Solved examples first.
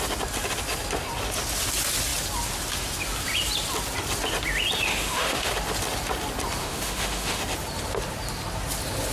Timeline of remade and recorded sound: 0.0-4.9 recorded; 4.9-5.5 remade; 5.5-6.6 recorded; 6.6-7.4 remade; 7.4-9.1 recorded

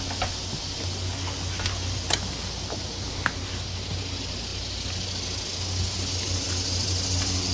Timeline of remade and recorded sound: 0.0-7.5 recorded